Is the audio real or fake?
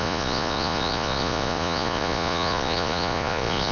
fake